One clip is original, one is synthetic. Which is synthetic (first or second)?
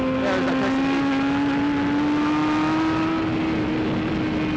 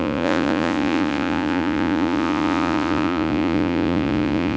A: second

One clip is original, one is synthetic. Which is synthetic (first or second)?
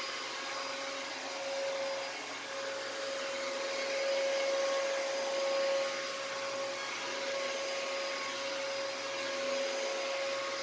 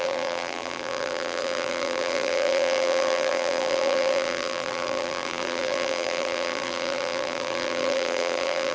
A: second